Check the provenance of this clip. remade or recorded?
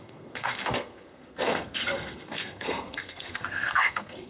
remade